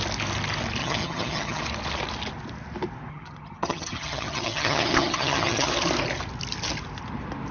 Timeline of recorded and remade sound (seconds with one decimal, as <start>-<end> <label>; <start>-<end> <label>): 0.0-0.8 recorded; 0.8-1.6 remade; 1.6-3.1 recorded; 3.1-5.7 remade; 5.7-7.5 recorded